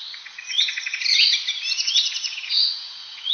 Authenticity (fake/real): fake